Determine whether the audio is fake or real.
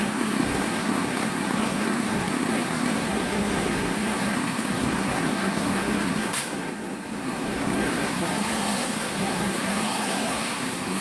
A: fake